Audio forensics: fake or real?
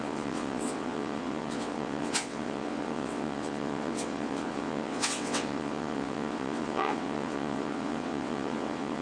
fake